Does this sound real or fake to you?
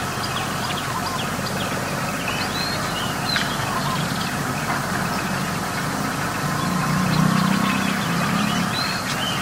real